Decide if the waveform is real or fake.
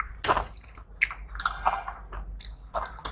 real